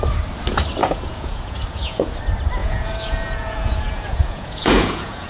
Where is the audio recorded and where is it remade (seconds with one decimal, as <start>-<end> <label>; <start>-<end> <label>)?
0.0-0.8 recorded; 0.8-2.2 remade; 2.2-2.6 recorded; 2.6-5.3 remade